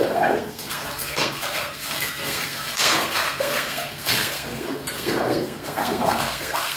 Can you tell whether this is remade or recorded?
remade